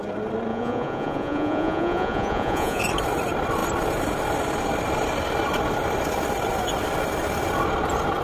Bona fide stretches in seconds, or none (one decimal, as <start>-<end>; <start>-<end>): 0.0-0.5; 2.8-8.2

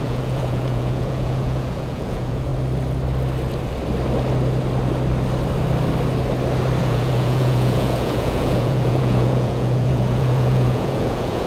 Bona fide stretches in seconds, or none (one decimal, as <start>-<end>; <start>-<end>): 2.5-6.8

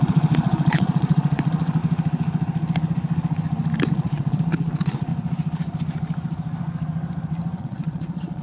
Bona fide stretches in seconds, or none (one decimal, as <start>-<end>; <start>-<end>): 1.8-3.9; 5.1-7.6

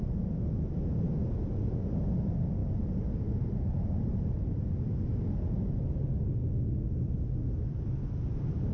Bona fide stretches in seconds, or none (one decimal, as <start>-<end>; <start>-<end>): 0.0-8.7

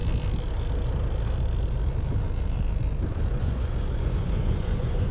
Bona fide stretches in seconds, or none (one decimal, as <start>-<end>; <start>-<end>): 0.0-3.1